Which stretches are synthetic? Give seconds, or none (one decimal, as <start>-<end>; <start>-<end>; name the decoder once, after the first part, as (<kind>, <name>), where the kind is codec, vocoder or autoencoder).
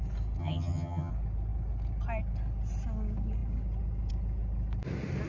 0.4-1.1 (vocoder, HiFi-GAN)